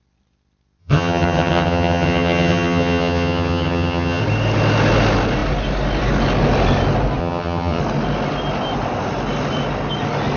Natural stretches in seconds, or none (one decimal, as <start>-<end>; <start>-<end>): 0.0-0.8; 4.2-7.2; 7.8-10.4